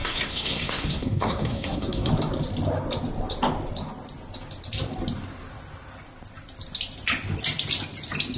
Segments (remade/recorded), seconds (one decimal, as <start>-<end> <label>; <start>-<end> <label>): 0.0-2.1 remade; 2.1-8.4 recorded